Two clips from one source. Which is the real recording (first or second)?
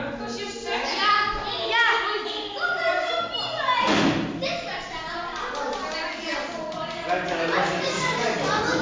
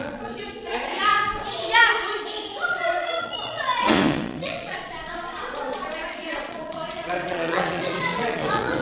first